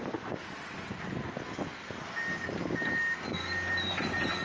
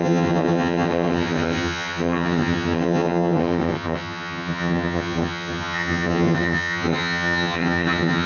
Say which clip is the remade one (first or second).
second